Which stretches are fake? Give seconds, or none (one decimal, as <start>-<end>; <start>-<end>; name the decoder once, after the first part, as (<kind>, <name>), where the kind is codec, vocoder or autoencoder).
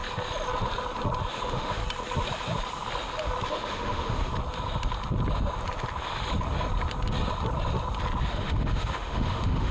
1.3-1.8 (autoencoder, DAC-VAE); 3.5-4.3; 8.3-9.7